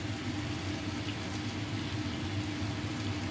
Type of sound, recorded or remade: recorded